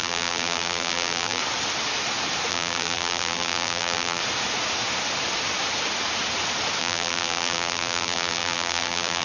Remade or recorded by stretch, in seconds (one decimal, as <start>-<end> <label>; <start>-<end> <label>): 0.0-1.4 remade; 1.4-2.5 recorded; 2.5-4.2 remade; 4.2-6.8 recorded; 6.8-9.2 remade